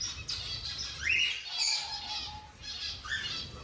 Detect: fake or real real